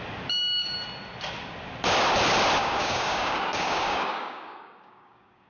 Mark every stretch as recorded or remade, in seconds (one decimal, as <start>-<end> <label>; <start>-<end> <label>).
0.0-2.6 recorded; 2.6-5.5 remade